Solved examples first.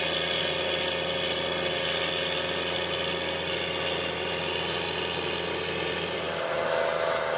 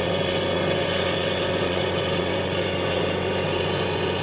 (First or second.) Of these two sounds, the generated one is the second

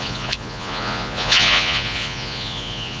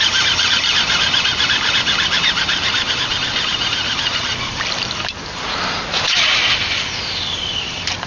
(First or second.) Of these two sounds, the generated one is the first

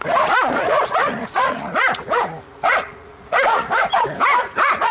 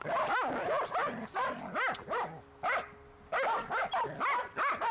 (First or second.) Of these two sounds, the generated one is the first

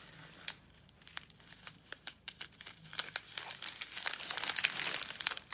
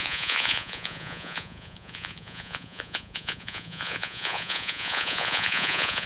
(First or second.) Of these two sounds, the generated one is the second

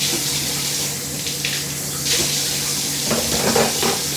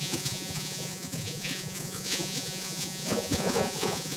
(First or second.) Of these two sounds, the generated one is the second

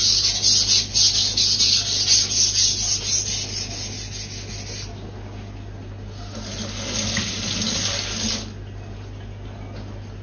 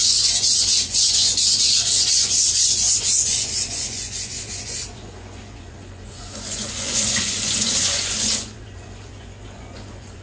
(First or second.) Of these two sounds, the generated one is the second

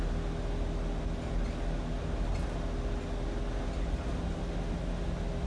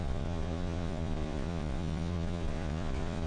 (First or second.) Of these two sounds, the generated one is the second